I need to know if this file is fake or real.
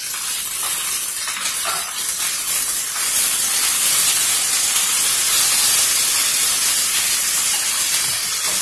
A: real